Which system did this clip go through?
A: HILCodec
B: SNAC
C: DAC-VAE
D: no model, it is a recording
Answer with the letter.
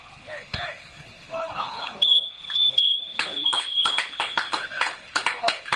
A